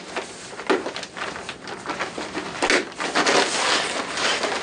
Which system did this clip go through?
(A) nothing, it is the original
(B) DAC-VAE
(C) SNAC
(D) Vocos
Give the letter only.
A